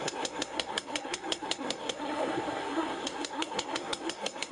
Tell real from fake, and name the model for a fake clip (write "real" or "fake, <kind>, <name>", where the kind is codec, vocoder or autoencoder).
fake, codec, SNAC